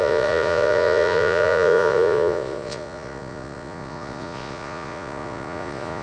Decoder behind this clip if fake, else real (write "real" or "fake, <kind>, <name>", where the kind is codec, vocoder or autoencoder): fake, vocoder, Vocos